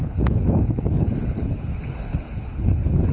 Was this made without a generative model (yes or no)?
no